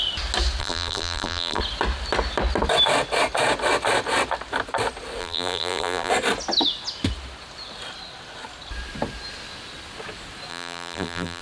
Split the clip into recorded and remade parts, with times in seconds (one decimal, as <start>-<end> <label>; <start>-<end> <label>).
0.0-0.6 recorded; 0.6-1.6 remade; 1.6-5.2 recorded; 5.2-6.1 remade; 6.1-10.5 recorded; 10.5-11.4 remade

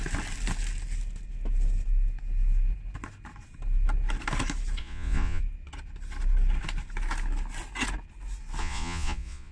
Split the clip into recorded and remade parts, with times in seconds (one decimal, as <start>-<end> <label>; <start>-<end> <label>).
0.0-4.8 recorded; 4.8-5.4 remade; 5.4-8.6 recorded; 8.6-9.5 remade

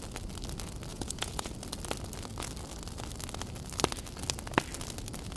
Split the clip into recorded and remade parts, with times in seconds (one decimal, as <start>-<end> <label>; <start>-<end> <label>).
0.0-0.9 recorded; 0.9-1.5 remade; 1.5-5.4 recorded

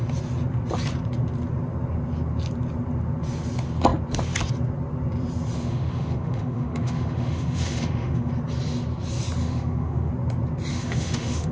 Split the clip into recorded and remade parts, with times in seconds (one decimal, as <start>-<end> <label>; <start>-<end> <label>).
0.0-5.6 recorded; 5.6-8.3 remade; 8.3-9.4 recorded; 9.4-10.1 remade; 10.1-10.7 recorded; 10.7-11.5 remade